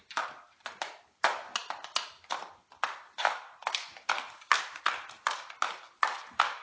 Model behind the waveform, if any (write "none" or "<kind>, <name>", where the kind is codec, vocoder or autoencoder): none